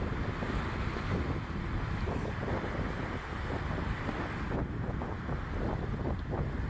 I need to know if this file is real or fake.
real